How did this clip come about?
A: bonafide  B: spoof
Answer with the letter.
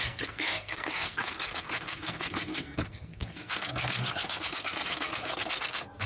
B